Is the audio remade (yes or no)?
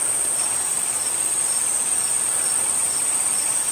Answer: no